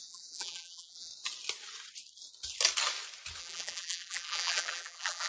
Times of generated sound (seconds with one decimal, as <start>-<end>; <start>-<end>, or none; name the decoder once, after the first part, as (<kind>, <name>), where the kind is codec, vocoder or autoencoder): 0.0-1.1 (vocoder, BigVGAN v2); 3.4-5.3